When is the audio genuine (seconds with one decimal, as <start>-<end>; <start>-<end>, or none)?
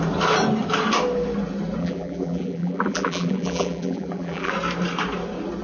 0.0-1.8; 4.5-5.6